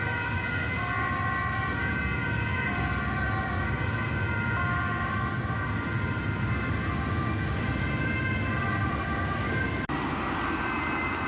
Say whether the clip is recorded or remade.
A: recorded